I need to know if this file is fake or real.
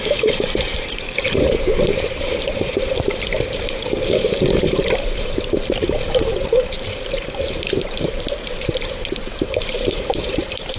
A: fake